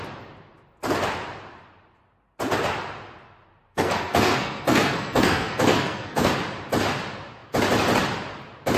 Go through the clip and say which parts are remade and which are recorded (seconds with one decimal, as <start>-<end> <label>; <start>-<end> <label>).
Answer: 0.0-3.7 recorded; 3.7-6.3 remade; 6.3-8.8 recorded